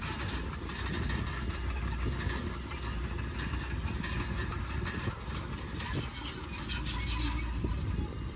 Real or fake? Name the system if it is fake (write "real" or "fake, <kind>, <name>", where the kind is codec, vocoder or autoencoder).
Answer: real